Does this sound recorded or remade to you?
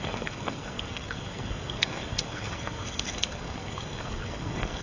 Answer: remade